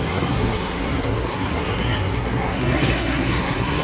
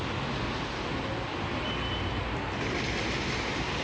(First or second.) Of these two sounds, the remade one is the first